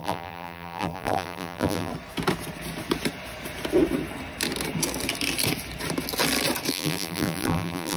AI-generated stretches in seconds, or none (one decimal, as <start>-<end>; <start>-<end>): 0.0-1.9; 6.7-8.0